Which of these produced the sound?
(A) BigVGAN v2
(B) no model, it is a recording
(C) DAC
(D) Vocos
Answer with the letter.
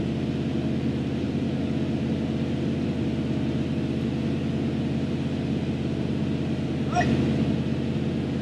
B